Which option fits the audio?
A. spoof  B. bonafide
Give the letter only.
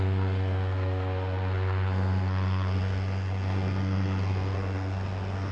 A